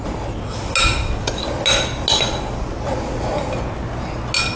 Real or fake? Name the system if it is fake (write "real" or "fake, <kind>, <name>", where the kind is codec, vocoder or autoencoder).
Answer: real